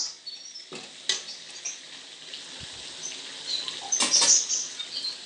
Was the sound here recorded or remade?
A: recorded